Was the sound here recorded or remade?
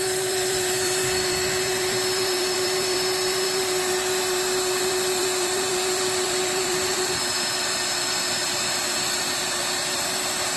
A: remade